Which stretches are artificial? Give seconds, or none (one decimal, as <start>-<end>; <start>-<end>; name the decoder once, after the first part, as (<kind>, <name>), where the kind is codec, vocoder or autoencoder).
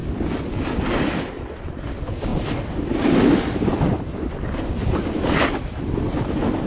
2.3-5.4 (vocoder, BigVGAN v2)